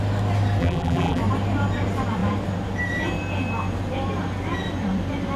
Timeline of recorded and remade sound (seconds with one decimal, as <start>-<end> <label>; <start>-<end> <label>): 0.0-0.6 recorded; 0.6-1.2 remade; 1.2-5.4 recorded